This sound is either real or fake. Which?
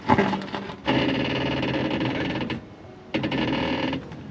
real